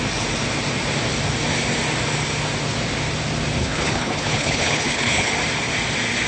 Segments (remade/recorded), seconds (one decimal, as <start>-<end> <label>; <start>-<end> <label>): 0.0-3.6 recorded; 3.6-5.3 remade; 5.3-6.3 recorded